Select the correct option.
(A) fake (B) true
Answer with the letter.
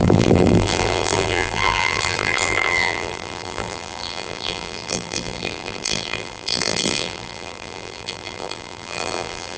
A